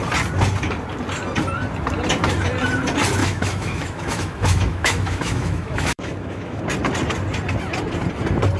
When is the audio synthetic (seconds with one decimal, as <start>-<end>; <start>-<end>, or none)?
3.2-6.6